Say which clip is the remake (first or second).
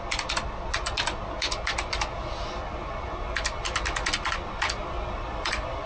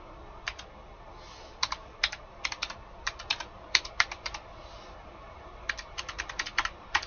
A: second